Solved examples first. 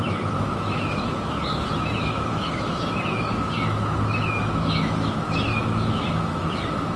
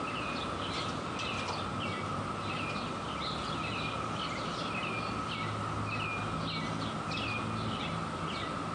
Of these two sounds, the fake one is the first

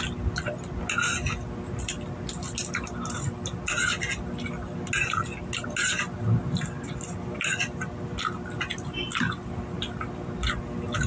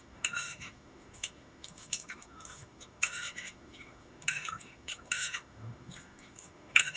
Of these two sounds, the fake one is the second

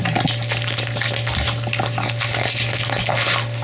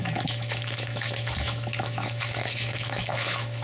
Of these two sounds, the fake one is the second